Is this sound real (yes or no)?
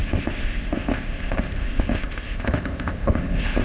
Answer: no